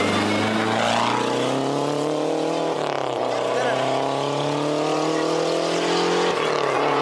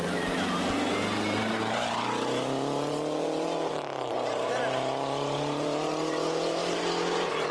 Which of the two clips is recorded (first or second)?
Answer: first